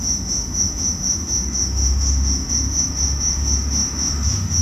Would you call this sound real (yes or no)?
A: no